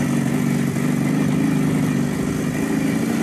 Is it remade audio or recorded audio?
recorded